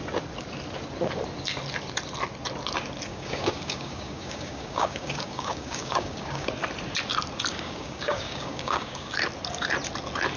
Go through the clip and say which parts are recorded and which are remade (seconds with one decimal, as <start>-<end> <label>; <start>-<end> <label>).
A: 0.0-3.1 recorded; 3.1-6.5 remade; 6.5-7.5 recorded; 7.5-9.1 remade; 9.1-10.4 recorded